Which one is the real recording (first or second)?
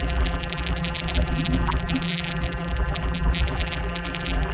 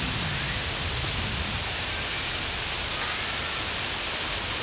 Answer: second